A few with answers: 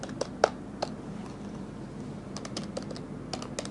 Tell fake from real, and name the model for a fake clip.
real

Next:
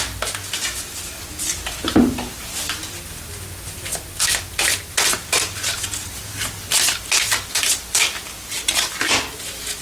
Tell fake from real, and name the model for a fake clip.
real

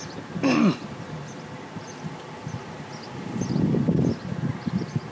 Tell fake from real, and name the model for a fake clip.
real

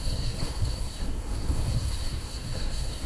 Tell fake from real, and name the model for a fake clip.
fake, codec, SNAC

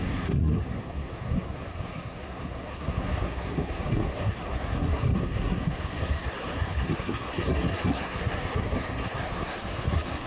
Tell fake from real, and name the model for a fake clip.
fake, codec, SNAC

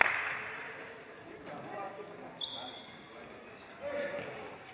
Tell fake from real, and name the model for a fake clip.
real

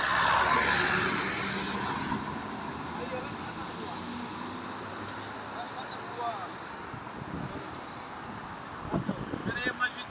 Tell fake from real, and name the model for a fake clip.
real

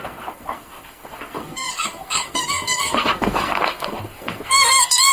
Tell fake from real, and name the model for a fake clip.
fake, codec, SNAC